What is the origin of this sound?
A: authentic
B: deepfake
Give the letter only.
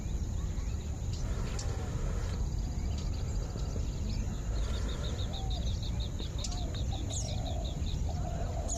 A